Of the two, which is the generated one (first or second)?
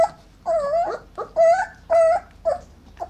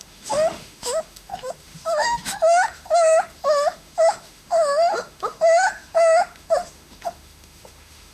second